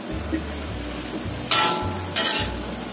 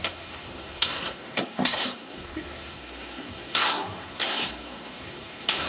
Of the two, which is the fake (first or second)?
second